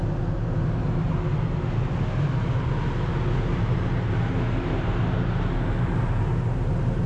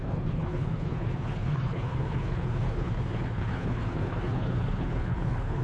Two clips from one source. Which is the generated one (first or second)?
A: second